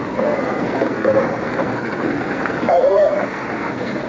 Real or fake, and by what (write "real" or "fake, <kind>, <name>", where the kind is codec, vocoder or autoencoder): fake, codec, SNAC